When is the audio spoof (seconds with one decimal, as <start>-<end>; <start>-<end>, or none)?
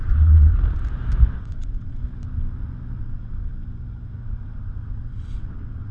0.0-0.5; 1.3-2.0; 3.0-3.5; 4.2-5.9